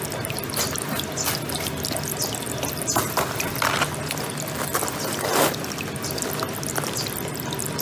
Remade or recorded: recorded